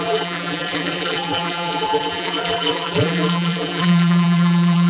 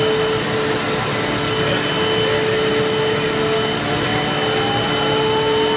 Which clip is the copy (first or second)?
first